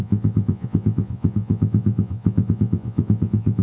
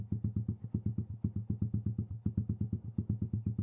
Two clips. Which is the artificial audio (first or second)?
first